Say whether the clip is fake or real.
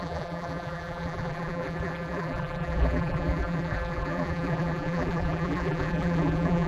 fake